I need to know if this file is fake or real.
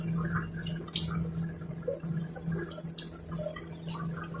real